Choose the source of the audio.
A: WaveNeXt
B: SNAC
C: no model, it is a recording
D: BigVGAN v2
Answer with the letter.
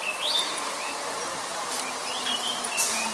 D